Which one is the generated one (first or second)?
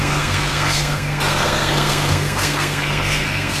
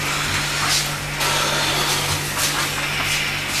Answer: first